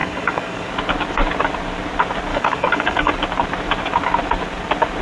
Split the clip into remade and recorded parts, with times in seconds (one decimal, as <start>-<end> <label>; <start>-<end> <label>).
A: 0.0-0.7 remade; 0.7-2.3 recorded; 2.3-3.1 remade; 3.1-5.0 recorded